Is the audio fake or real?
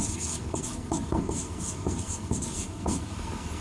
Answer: fake